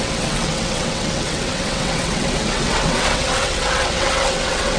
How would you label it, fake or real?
fake